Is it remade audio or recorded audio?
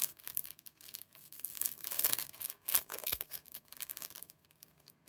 remade